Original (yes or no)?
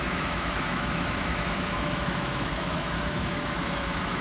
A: no